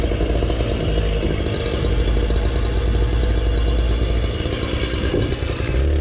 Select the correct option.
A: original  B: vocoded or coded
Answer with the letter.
A